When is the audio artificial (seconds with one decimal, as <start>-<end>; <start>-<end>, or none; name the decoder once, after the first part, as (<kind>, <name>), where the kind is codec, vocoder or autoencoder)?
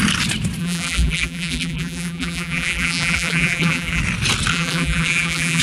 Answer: 0.6-4.0 (vocoder, BigVGAN v2); 4.5-5.6